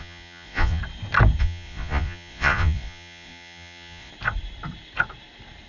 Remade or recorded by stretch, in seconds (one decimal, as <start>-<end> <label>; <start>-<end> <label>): 0.0-0.8 remade; 0.8-1.4 recorded; 1.4-4.1 remade; 4.1-5.7 recorded